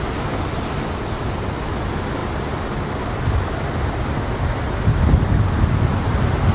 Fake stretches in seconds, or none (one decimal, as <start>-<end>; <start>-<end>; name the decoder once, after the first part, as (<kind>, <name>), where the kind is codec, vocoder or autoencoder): none